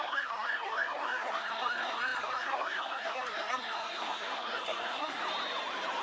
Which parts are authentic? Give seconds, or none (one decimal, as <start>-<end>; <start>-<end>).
5.2-6.0